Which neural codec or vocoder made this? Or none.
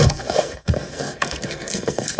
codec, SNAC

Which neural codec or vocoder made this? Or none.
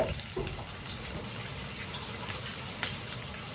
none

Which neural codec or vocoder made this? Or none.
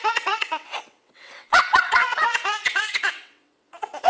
vocoder, WaveNeXt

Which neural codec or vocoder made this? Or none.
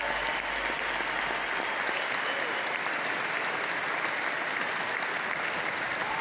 none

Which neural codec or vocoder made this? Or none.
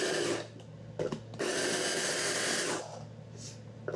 none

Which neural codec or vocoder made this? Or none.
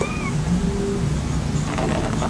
none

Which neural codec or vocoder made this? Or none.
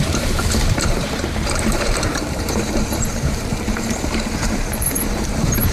vocoder, BigVGAN v2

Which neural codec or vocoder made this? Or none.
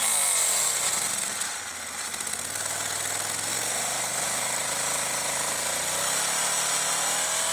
none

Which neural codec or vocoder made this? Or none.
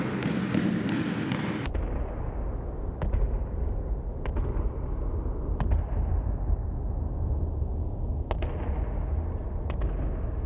none